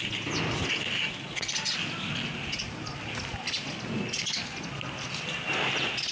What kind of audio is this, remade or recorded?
recorded